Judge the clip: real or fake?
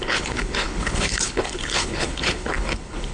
fake